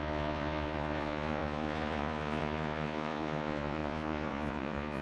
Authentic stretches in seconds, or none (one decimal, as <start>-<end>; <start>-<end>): none

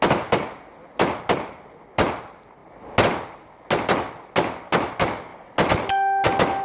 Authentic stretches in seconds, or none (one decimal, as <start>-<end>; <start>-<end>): 0.0-6.6

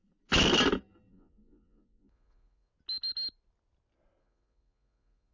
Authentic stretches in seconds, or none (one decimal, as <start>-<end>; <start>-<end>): 0.0-1.1; 2.7-4.2

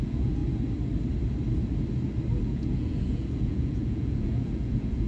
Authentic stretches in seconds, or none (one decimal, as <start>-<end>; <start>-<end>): 0.4-2.4

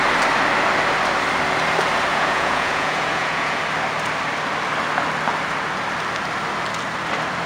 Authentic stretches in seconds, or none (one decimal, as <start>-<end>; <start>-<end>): 0.0-2.1; 3.6-7.5

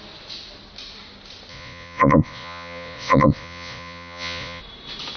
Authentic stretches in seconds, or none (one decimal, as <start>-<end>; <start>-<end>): 0.0-1.5; 4.6-5.2

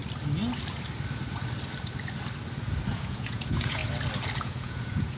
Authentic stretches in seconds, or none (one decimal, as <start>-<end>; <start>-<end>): 0.0-2.9; 3.8-4.4

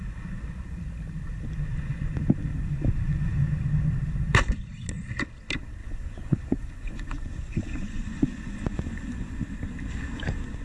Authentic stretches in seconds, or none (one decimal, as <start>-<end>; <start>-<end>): 0.0-2.5; 3.5-5.8; 9.4-10.6